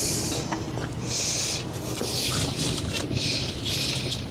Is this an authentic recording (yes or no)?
yes